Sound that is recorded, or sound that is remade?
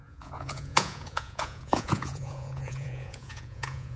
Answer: remade